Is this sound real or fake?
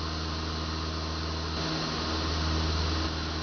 real